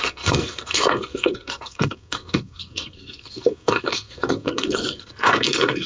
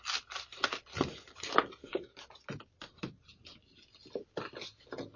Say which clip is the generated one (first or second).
first